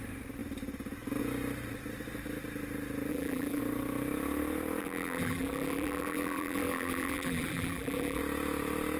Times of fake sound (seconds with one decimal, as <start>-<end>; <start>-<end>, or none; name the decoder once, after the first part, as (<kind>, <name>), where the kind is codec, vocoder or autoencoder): 3.1-3.6 (vocoder, BigVGAN v2); 4.8-8.2